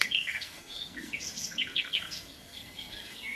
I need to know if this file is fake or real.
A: fake